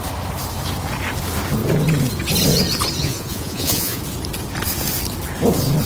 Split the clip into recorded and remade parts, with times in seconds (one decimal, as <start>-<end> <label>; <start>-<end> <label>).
0.0-3.0 recorded; 3.0-4.0 remade; 4.0-5.9 recorded